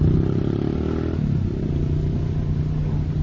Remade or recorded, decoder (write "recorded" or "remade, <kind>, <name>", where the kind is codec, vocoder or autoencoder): recorded